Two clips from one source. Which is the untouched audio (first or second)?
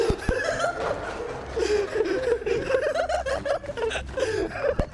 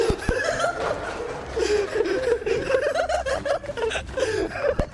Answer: first